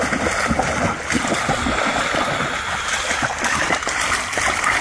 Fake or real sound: real